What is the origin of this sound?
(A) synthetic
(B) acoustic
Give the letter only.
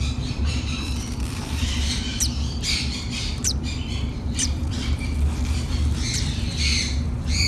A